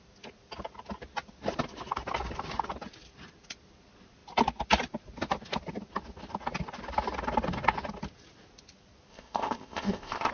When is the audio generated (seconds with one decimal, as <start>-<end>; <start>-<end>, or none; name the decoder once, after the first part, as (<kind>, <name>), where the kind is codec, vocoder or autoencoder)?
9.1-10.3 (codec, ZipCodec)